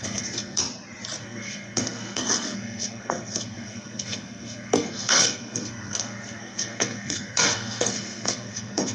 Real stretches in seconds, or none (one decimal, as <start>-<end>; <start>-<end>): 0.6-1.2